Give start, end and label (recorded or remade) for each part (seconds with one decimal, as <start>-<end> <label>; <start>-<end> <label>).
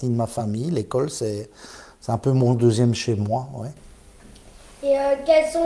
0.0-5.7 recorded